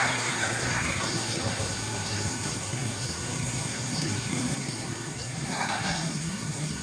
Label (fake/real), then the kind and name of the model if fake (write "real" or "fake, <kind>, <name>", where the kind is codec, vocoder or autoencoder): fake, codec, SNAC